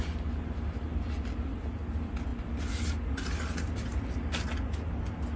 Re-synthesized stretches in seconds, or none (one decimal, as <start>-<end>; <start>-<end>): none